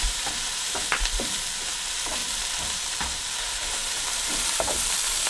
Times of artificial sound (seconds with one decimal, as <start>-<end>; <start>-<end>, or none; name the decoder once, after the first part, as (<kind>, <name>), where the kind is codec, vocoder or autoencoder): 0.0-2.2 (vocoder, BigVGAN v2); 2.9-5.3